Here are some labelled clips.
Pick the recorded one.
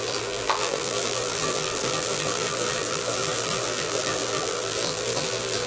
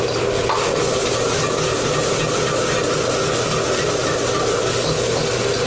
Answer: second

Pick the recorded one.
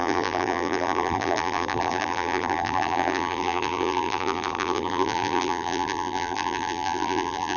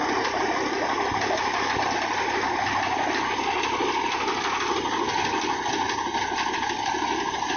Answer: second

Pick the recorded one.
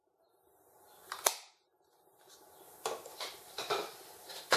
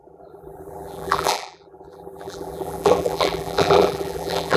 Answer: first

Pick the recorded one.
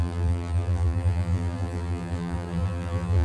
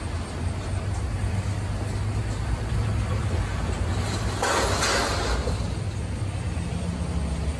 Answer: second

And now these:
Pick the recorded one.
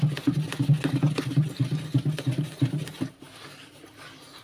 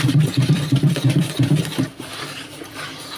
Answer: first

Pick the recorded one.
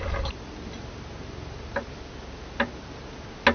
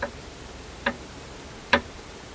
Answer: first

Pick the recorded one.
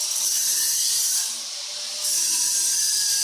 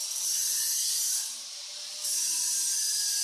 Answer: second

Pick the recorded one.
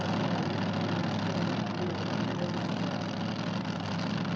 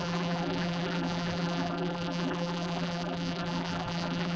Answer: first